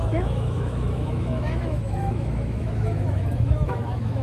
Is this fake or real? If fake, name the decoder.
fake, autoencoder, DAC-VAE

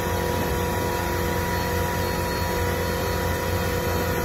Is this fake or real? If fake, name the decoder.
real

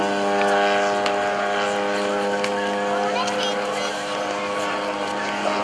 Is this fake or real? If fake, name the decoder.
real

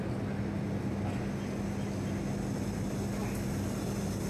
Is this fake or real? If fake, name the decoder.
real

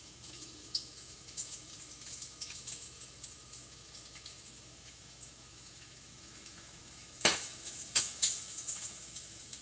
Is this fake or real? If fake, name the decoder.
fake, autoencoder, DAC-VAE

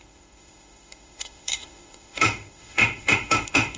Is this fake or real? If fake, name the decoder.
fake, autoencoder, DAC-VAE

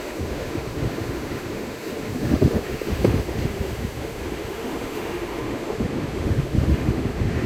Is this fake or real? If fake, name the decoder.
fake, autoencoder, DAC-VAE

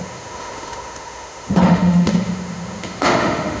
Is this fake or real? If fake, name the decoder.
fake, autoencoder, DAC-VAE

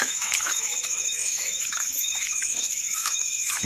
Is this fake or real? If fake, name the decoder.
fake, autoencoder, DAC-VAE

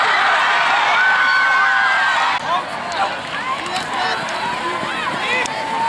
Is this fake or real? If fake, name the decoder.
real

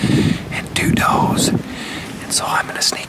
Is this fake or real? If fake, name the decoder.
real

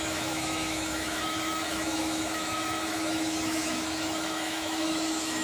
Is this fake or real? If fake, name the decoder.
fake, autoencoder, DAC-VAE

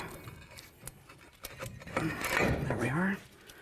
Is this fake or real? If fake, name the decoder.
real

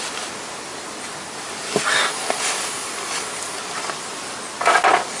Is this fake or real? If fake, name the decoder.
real